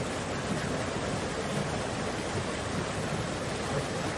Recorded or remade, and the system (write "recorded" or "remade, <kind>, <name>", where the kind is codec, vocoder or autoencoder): recorded